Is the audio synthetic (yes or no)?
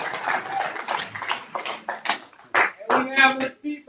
no